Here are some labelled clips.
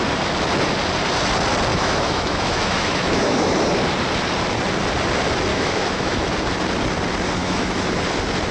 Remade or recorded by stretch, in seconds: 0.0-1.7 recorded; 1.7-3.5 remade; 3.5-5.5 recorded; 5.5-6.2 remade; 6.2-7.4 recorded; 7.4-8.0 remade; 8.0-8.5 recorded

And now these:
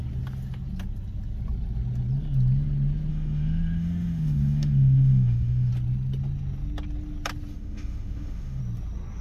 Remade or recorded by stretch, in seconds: 0.0-3.1 recorded; 3.1-5.7 remade; 5.7-7.5 recorded; 7.5-8.6 remade; 8.6-9.2 recorded

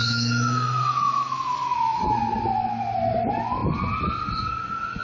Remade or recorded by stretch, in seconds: 0.0-2.2 remade; 2.2-5.0 recorded

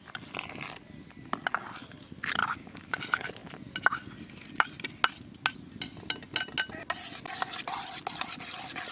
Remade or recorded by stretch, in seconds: 0.0-2.4 recorded; 2.4-3.0 remade; 3.0-8.9 recorded

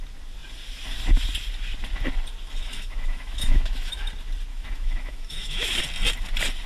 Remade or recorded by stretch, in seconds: 0.0-2.6 recorded; 2.6-4.1 remade; 4.1-4.5 recorded; 4.5-5.8 remade; 5.8-6.7 recorded